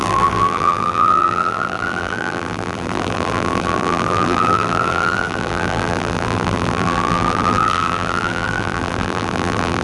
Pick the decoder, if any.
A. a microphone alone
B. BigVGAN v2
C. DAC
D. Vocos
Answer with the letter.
B